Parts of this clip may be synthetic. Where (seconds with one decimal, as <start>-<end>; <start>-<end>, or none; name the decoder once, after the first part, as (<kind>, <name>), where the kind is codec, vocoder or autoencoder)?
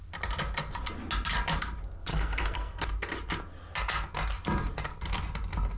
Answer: 2.1-2.8 (codec, SNAC)